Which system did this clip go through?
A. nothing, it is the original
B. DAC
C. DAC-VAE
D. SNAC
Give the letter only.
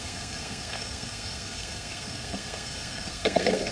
D